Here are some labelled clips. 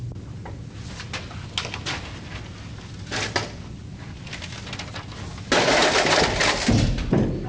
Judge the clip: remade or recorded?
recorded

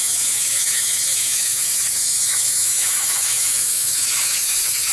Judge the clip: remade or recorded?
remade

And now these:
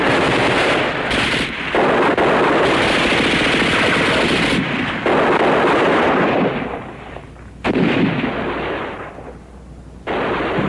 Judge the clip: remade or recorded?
recorded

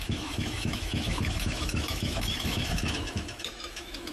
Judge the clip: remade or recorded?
remade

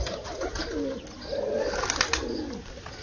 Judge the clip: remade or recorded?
recorded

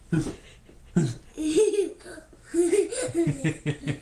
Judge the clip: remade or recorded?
recorded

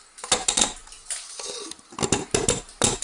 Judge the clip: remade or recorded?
recorded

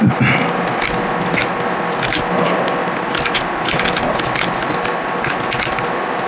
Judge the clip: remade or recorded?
recorded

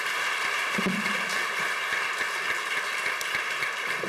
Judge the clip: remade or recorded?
recorded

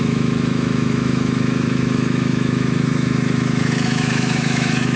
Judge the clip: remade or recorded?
remade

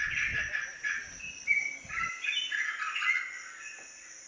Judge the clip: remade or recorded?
recorded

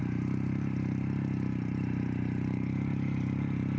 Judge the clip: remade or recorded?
recorded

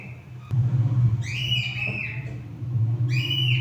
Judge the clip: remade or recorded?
recorded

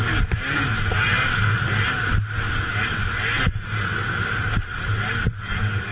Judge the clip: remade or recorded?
recorded